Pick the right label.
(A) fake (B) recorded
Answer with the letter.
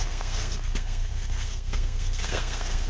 A